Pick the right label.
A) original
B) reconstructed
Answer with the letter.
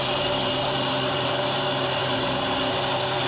A